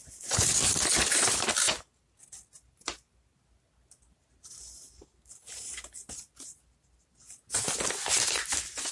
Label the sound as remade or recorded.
recorded